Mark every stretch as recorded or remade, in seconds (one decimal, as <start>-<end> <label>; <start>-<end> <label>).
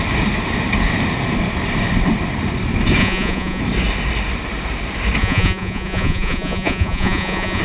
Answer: 0.0-3.0 recorded; 3.0-3.6 remade; 3.6-5.2 recorded; 5.2-7.6 remade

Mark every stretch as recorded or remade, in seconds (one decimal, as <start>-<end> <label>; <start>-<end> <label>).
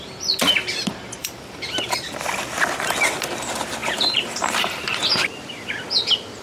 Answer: 0.0-1.2 recorded; 1.2-2.1 remade; 2.1-3.8 recorded; 3.8-5.0 remade; 5.0-6.4 recorded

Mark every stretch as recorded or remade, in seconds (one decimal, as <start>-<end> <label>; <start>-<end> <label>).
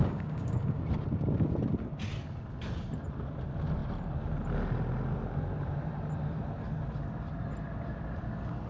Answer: 0.0-0.8 remade; 0.8-8.7 recorded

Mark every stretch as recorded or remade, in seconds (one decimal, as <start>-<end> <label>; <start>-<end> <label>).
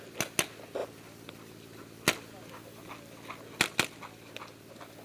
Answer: 0.0-5.0 recorded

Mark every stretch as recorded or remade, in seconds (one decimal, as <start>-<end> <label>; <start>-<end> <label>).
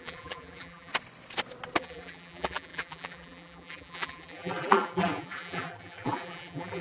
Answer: 0.0-0.9 remade; 0.9-1.8 recorded; 1.8-6.8 remade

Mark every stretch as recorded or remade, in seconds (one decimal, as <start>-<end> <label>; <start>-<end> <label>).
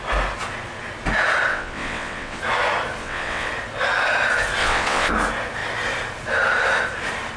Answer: 0.0-1.5 recorded; 1.5-2.4 remade; 2.4-3.0 recorded; 3.0-3.5 remade; 3.5-4.6 recorded; 4.6-5.1 remade; 5.1-7.4 recorded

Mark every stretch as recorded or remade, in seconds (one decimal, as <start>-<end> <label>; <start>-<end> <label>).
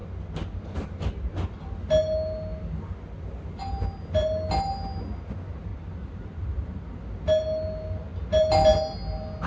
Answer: 0.0-5.7 recorded; 5.7-7.0 remade; 7.0-9.5 recorded